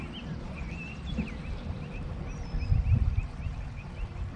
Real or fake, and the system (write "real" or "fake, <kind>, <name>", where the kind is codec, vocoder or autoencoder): real